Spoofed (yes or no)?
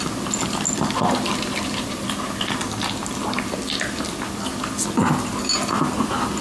no